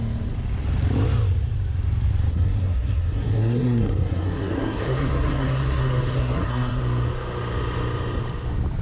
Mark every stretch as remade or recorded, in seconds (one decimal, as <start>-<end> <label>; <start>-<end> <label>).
0.0-2.3 recorded; 2.3-6.8 remade; 6.8-8.8 recorded